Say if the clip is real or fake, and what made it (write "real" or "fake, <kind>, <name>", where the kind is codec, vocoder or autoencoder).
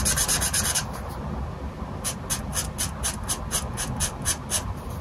real